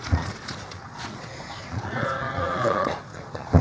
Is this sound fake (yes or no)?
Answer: yes